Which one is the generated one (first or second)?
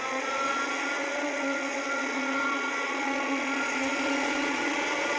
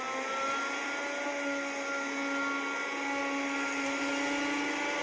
first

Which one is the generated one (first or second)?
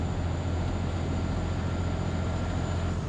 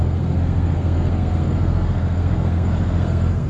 second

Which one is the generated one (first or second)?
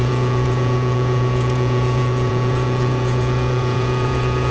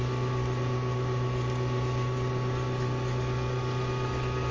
first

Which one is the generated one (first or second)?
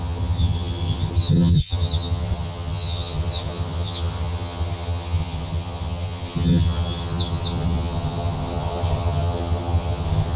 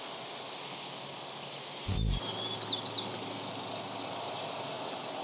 first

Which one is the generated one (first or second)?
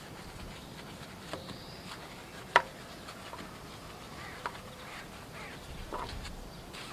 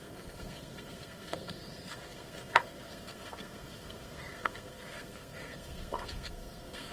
second